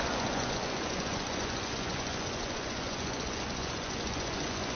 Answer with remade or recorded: remade